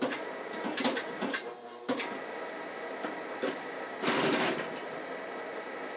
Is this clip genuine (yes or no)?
yes